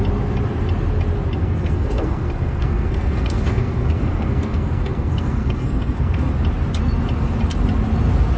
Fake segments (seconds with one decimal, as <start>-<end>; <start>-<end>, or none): 1.4-6.3